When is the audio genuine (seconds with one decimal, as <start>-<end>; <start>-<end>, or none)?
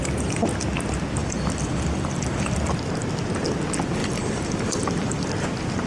0.0-1.2; 2.6-4.0; 5.3-5.9